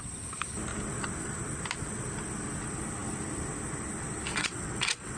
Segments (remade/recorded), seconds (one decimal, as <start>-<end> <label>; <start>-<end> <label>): 0.0-4.3 recorded; 4.3-5.2 remade